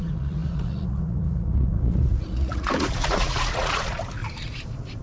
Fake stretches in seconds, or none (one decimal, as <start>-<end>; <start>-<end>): 0.0-4.2